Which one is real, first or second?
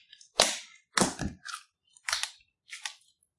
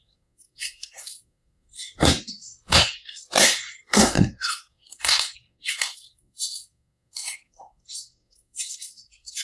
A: first